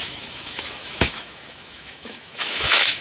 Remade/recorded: remade